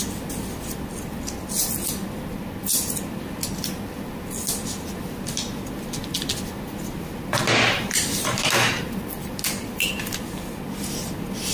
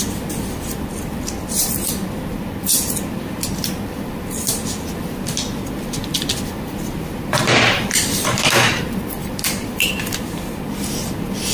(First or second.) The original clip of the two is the first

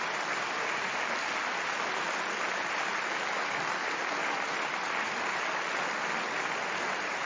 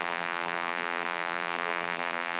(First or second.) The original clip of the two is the first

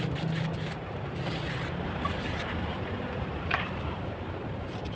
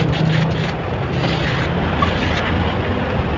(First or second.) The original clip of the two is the second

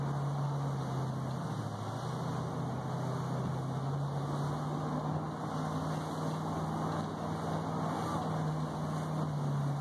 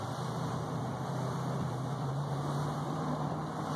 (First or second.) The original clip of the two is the first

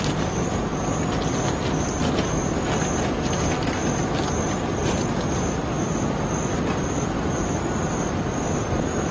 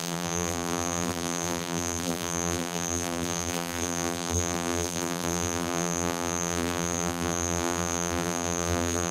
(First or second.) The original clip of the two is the first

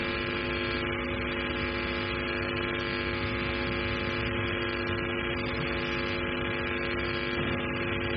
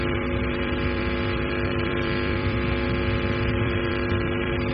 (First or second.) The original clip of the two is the first